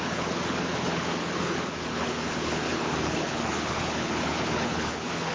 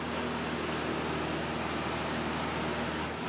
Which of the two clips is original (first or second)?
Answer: second